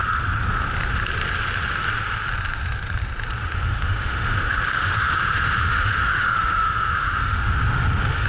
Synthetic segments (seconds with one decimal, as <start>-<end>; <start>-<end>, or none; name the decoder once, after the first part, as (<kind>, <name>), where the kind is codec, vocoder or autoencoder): 3.4-8.3 (autoencoder, DAC-VAE)